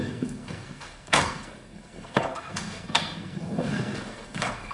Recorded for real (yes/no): no